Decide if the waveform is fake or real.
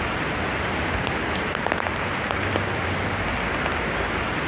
real